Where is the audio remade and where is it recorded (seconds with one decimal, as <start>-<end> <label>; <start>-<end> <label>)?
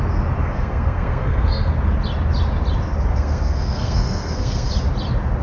0.0-0.4 recorded; 0.4-1.7 remade; 1.7-3.1 recorded; 3.1-4.7 remade; 4.7-5.4 recorded